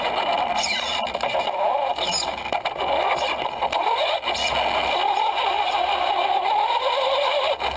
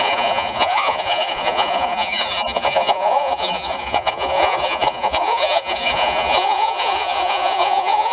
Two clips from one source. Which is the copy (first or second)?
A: second